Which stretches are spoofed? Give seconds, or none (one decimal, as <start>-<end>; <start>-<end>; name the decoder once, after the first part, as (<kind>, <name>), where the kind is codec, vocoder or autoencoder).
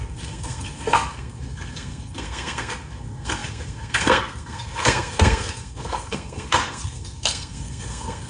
0.0-8.3 (codec, SNAC)